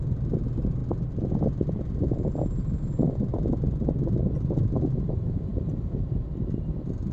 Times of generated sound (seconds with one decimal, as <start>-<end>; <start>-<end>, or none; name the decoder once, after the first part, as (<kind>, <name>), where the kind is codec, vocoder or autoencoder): none

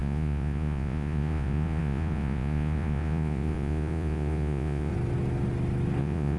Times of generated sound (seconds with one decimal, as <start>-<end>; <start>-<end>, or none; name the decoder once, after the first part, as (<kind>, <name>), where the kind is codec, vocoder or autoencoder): 0.0-4.9 (vocoder, Vocos); 6.0-6.4

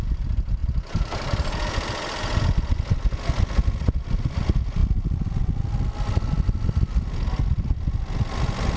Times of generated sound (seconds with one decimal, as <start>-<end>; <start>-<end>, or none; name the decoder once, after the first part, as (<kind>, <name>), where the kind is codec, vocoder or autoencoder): none

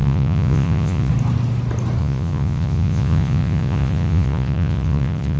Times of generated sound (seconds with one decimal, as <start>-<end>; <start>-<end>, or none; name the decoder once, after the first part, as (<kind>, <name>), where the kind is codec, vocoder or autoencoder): 0.0-1.1 (vocoder, Vocos); 2.0-5.4